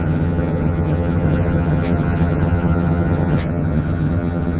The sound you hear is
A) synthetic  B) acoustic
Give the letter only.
A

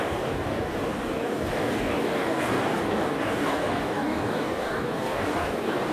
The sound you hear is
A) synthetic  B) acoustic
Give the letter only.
A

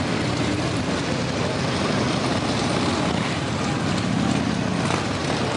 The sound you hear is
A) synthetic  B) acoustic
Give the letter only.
B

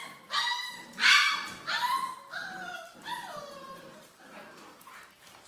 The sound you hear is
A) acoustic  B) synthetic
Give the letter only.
B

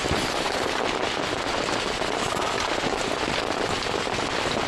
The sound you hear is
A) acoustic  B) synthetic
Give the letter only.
A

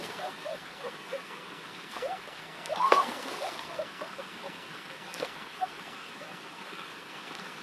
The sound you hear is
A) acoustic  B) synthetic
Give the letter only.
B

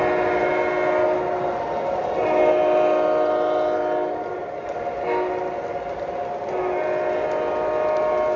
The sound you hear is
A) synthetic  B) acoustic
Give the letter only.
B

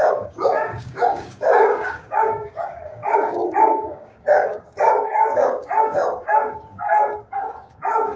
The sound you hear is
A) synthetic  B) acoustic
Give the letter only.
A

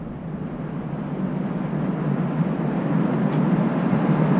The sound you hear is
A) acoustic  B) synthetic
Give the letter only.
A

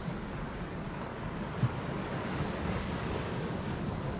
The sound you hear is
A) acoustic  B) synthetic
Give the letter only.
B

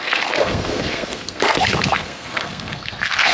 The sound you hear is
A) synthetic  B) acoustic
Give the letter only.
A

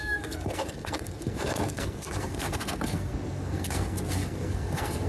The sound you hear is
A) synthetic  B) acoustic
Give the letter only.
A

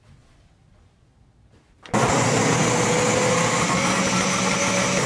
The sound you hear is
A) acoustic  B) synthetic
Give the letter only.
A